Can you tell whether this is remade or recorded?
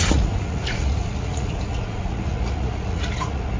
remade